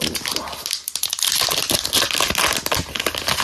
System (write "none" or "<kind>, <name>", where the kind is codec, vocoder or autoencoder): none